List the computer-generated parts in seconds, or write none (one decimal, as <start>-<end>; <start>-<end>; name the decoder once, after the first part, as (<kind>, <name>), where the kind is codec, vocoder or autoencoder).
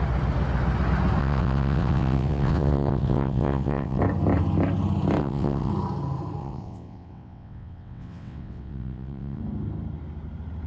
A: 1.2-4.0 (vocoder, WaveNeXt); 5.2-5.7; 6.4-9.4